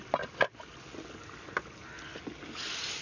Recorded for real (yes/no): yes